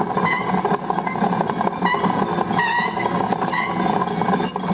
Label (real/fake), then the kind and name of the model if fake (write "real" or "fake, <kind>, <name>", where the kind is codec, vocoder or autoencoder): real